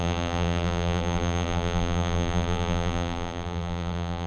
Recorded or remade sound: remade